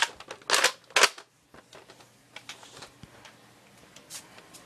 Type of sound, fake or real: real